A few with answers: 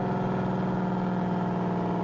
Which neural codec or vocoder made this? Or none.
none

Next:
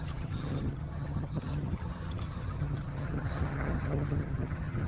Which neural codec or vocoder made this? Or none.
vocoder, HiFi-GAN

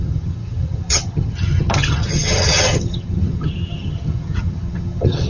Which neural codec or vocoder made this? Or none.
vocoder, HiFi-GAN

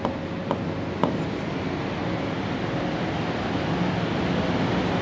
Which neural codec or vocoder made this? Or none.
none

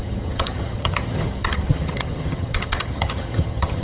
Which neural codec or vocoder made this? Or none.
vocoder, HiFi-GAN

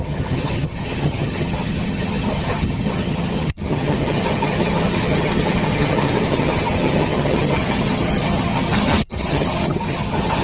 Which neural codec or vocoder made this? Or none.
vocoder, HiFi-GAN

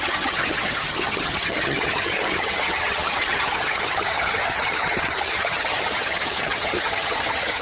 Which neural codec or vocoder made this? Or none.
vocoder, HiFi-GAN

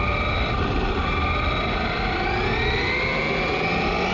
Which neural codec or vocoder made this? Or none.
none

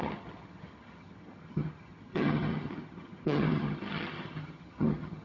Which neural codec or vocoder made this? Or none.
vocoder, HiFi-GAN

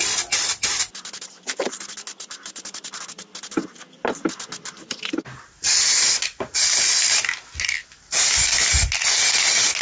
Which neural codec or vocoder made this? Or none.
none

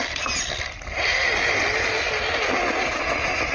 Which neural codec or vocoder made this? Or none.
none